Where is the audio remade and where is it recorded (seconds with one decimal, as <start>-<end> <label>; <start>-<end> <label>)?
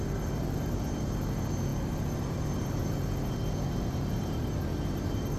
0.0-2.8 remade; 2.8-3.9 recorded; 3.9-5.4 remade